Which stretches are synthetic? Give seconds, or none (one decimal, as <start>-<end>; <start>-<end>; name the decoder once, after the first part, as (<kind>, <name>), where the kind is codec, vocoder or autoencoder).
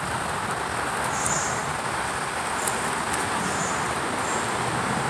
none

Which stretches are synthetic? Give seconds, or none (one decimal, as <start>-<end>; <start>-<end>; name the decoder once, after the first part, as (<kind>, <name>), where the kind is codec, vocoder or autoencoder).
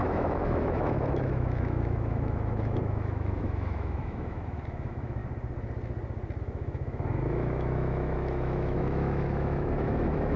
0.0-5.2 (autoencoder, DAC-VAE); 6.4-10.4